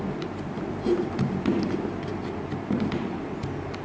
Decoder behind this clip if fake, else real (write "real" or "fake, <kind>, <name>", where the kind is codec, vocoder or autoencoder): real